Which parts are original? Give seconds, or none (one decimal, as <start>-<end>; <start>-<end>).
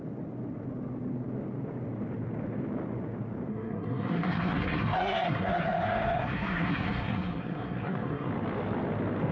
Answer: 0.0-3.5; 8.3-9.3